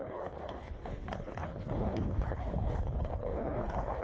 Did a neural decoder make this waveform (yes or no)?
yes